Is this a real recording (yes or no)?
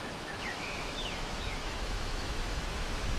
no